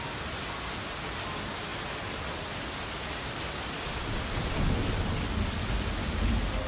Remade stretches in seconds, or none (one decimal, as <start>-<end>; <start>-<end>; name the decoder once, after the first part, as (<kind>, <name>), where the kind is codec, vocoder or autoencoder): 1.7-4.6 (vocoder, BigVGAN v2)